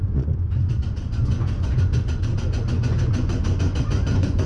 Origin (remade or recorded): remade